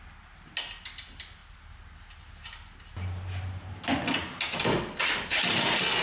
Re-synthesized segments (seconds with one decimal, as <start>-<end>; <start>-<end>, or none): none